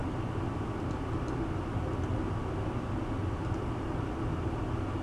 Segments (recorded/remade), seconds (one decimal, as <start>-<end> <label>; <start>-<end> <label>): 0.0-5.0 recorded